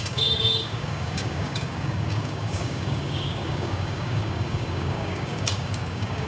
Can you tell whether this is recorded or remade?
remade